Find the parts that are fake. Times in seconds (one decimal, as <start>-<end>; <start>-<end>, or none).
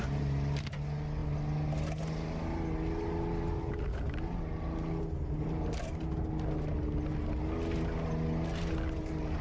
none